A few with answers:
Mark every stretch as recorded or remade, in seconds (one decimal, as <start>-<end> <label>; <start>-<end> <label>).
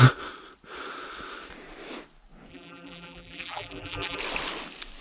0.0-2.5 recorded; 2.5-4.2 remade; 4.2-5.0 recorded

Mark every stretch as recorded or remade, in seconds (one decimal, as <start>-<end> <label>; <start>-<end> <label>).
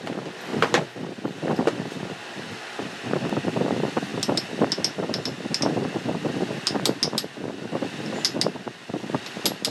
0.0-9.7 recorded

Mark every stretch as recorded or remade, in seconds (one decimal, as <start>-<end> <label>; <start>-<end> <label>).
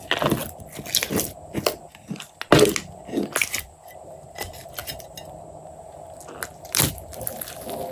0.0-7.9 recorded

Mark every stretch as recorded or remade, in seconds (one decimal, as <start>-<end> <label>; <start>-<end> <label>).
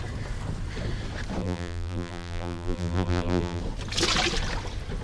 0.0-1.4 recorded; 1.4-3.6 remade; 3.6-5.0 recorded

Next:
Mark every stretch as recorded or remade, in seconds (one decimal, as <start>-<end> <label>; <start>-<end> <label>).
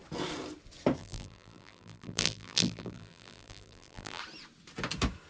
0.0-1.0 recorded; 1.0-4.2 remade; 4.2-5.3 recorded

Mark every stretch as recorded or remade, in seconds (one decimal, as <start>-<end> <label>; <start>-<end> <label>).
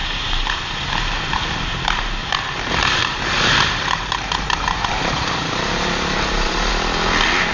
0.0-0.8 remade; 0.8-2.2 recorded; 2.2-6.7 remade; 6.7-7.5 recorded